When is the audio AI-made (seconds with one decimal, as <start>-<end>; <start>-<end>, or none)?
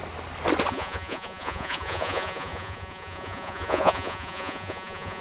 0.7-5.2